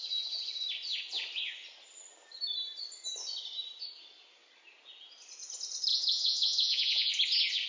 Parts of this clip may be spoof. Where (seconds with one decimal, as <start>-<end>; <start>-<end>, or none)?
5.9-7.1